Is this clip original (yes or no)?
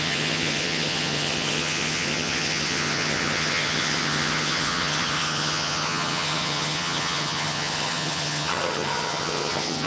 no